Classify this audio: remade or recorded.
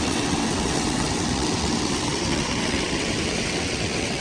remade